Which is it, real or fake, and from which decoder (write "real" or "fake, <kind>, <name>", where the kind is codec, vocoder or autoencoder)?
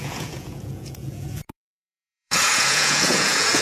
fake, vocoder, Vocos